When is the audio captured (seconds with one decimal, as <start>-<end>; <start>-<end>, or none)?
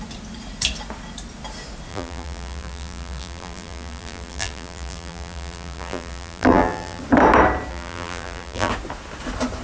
0.0-1.9; 7.0-7.7; 8.7-9.6